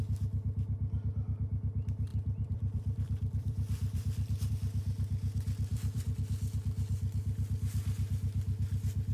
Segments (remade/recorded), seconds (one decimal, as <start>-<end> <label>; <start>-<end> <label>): 0.0-2.1 recorded; 2.1-4.5 remade; 4.5-5.7 recorded; 5.7-6.2 remade; 6.2-9.1 recorded